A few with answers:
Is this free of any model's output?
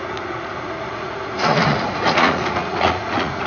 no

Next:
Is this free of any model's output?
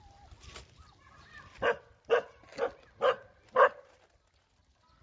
yes